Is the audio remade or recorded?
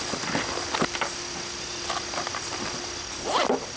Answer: recorded